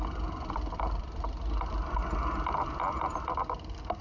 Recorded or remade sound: recorded